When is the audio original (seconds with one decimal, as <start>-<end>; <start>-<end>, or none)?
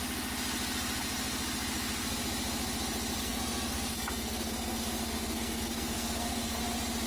0.0-3.2; 6.6-7.1